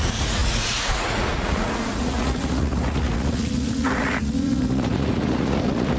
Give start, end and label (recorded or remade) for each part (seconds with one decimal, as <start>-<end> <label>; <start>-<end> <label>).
0.0-6.0 remade